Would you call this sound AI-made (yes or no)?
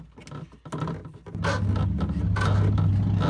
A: no